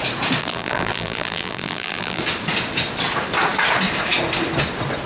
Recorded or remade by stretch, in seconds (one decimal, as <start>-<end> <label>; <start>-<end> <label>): 0.0-0.4 recorded; 0.4-2.2 remade; 2.2-5.1 recorded